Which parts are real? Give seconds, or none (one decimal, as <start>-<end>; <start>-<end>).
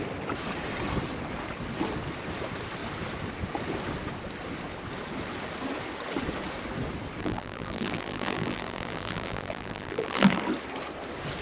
0.0-7.2; 10.4-11.4